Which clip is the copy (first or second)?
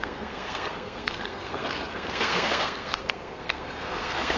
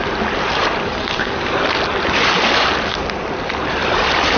first